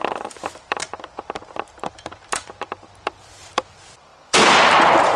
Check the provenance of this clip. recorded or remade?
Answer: remade